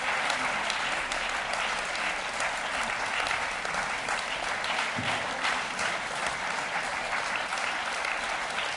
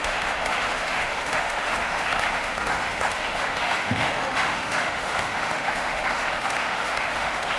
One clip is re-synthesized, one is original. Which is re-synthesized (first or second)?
second